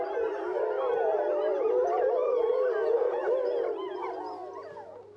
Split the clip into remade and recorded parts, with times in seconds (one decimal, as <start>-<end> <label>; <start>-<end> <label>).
0.0-1.1 recorded; 1.1-4.2 remade; 4.2-5.2 recorded